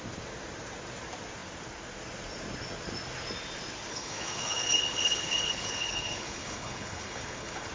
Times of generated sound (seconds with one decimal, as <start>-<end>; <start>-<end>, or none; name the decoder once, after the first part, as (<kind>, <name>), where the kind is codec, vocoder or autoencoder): 3.9-7.7 (codec, HILCodec)